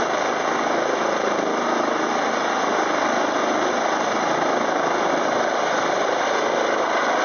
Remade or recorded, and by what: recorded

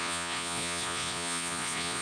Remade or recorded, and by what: remade, vocoder, Vocos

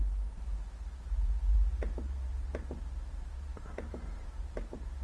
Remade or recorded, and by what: remade, vocoder, BigVGAN v2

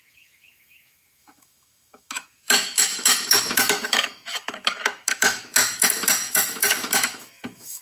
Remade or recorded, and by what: remade, autoencoder, DAC-VAE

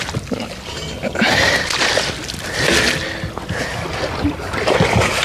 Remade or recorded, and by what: recorded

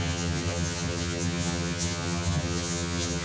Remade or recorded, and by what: remade, vocoder, HiFi-GAN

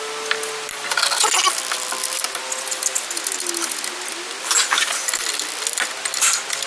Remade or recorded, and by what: recorded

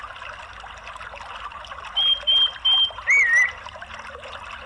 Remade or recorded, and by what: recorded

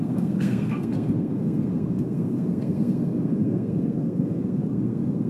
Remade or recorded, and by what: remade, codec, SNAC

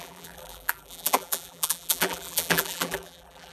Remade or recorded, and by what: remade, vocoder, BigVGAN v2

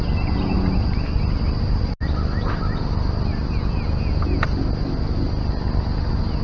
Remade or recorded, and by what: recorded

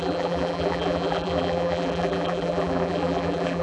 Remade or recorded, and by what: remade, vocoder, BigVGAN v2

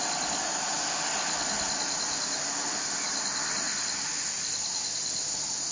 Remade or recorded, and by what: recorded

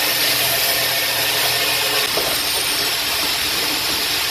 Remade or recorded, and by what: recorded